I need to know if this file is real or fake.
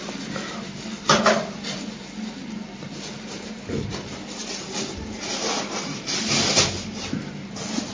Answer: real